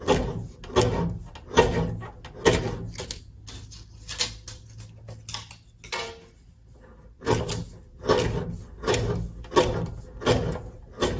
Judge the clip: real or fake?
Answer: real